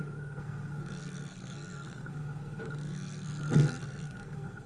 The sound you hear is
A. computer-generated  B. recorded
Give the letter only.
A